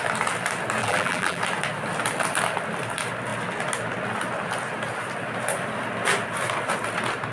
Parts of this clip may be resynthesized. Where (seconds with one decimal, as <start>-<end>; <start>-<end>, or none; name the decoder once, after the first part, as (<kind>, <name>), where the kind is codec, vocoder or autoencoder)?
0.8-1.4 (vocoder, BigVGAN v2)